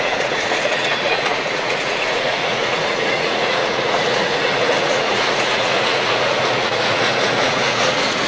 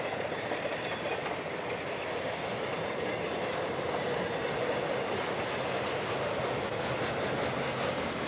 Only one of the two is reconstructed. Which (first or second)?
first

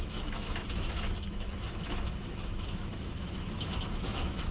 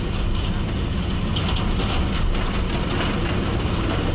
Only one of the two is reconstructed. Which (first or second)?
first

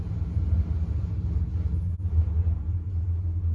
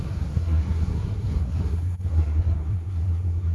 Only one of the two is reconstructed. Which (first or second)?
second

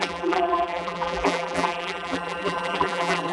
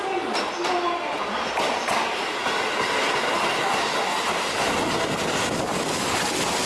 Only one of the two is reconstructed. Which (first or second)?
first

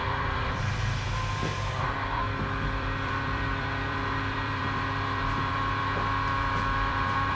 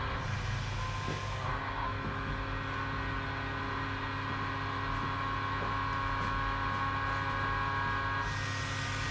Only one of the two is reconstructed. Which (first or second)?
first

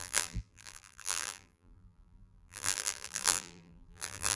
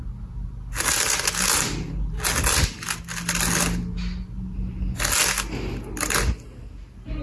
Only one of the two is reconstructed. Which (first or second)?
first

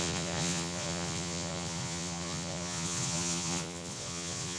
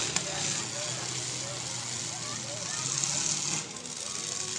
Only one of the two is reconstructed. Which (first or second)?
first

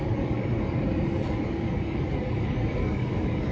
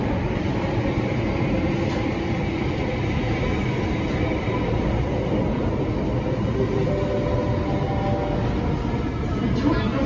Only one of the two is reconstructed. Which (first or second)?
first